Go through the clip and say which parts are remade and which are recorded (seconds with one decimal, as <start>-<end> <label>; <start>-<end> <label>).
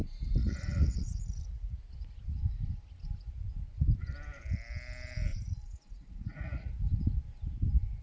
0.0-0.4 recorded; 0.4-1.8 remade; 1.8-5.3 recorded; 5.3-6.7 remade; 6.7-8.0 recorded